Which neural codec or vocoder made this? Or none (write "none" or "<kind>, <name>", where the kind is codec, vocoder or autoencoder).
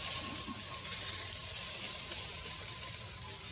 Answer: vocoder, BigVGAN v2